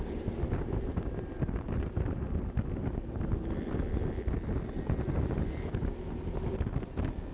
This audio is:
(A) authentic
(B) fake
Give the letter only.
A